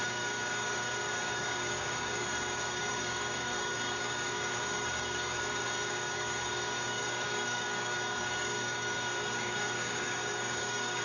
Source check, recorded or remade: remade